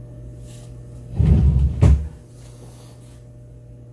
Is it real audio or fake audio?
real